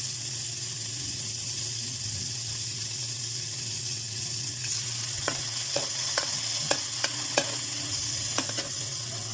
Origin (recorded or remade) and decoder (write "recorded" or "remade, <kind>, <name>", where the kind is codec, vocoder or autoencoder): remade, vocoder, WaveNeXt